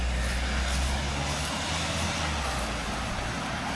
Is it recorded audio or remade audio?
recorded